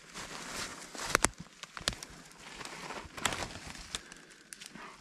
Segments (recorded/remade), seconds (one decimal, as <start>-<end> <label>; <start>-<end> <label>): 0.0-0.7 recorded; 0.7-1.5 remade; 1.5-5.0 recorded